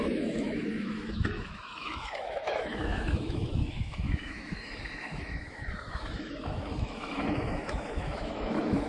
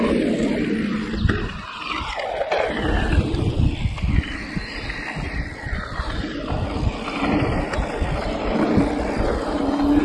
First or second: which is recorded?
second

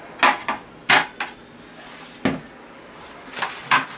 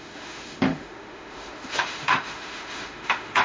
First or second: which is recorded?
first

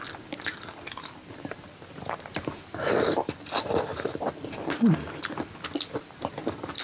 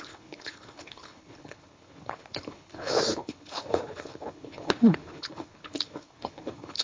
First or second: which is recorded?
first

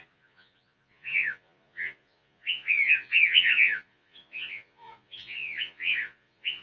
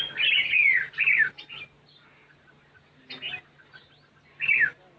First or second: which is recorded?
second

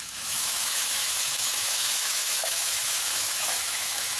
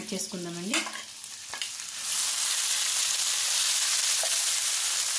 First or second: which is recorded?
second